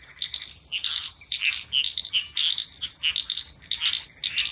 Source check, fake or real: real